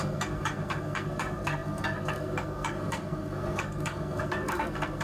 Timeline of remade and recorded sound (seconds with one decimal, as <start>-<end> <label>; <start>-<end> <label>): 0.0-5.0 remade